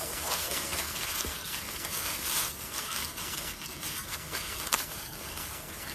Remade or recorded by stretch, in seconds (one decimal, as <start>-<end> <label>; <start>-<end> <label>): 0.0-5.9 remade